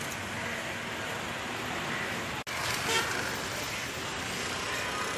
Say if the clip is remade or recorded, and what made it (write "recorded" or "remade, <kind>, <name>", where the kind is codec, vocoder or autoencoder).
recorded